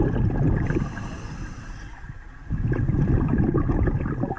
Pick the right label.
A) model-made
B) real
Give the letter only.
B